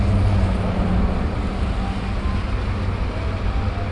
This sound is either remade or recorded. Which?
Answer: recorded